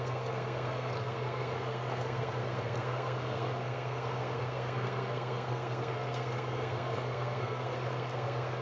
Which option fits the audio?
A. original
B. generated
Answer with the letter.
B